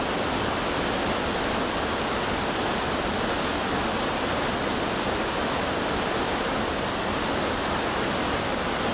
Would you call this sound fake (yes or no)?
no